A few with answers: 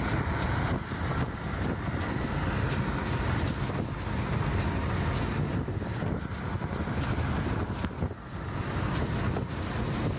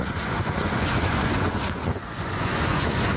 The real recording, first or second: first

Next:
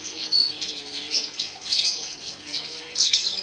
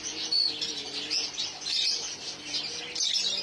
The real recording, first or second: second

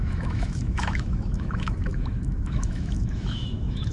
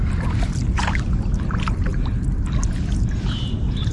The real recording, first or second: second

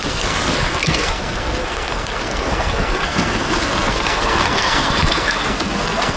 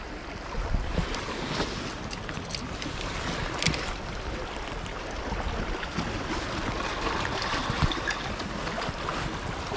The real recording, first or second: second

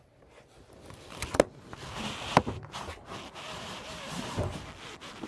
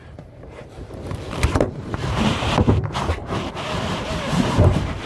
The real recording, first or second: first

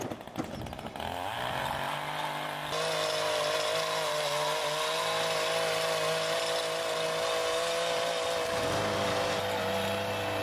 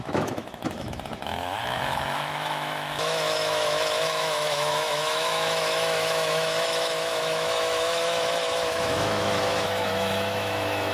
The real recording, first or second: first